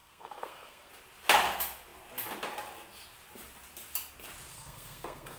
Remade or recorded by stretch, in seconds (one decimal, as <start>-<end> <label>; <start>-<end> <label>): 0.0-0.9 remade; 0.9-4.5 recorded; 4.5-5.4 remade